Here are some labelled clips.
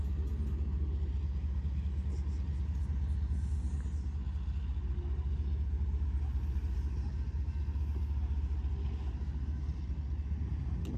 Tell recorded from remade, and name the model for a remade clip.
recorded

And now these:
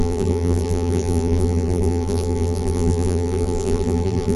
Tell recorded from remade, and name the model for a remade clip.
remade, vocoder, BigVGAN v2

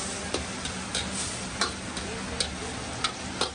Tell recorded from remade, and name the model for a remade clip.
recorded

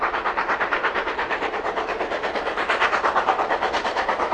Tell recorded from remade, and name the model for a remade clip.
remade, vocoder, BigVGAN v2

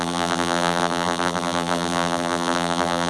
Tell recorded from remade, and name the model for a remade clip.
remade, vocoder, BigVGAN v2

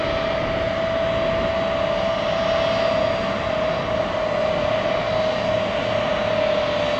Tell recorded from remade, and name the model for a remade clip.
recorded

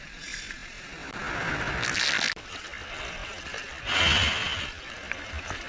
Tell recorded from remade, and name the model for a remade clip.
recorded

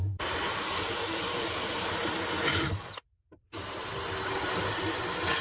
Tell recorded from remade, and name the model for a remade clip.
remade, vocoder, BigVGAN v2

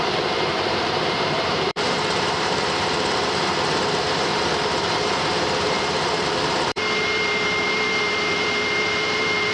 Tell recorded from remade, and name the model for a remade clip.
remade, vocoder, BigVGAN v2